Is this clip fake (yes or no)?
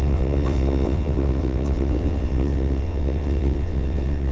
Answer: yes